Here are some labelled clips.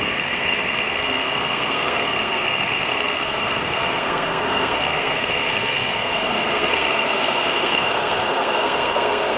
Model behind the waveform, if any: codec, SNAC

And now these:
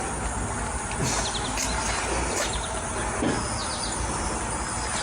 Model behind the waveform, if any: none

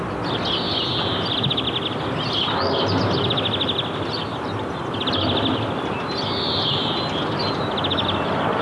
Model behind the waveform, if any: none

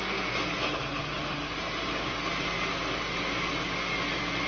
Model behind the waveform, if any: none